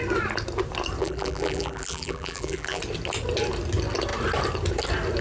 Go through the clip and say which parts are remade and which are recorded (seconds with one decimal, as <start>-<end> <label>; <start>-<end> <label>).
0.0-1.0 recorded; 1.0-2.8 remade; 2.8-5.2 recorded